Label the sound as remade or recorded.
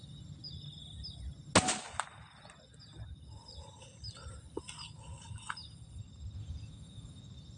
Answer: recorded